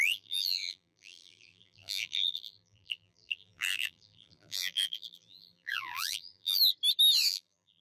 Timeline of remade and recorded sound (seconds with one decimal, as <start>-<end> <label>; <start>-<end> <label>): 0.0-6.6 remade; 6.6-7.3 recorded; 7.3-7.8 remade